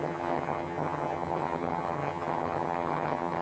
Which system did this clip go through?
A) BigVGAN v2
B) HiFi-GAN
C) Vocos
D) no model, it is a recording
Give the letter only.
B